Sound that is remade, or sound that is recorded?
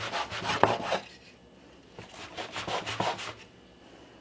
recorded